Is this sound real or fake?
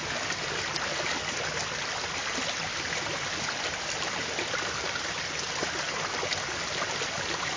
real